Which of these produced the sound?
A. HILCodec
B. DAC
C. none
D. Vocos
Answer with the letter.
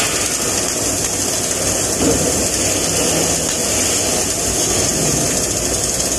C